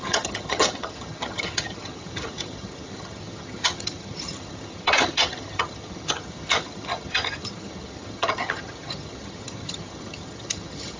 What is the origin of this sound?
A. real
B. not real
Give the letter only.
B